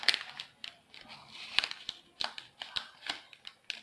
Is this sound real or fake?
real